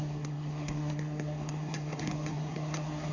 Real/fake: fake